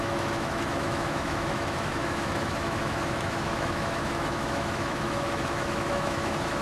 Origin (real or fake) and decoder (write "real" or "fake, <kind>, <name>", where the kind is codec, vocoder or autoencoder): fake, autoencoder, DAC-VAE